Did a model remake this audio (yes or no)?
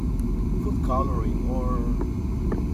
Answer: no